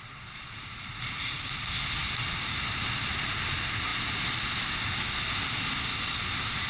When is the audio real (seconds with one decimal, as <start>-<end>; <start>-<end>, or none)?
0.0-6.7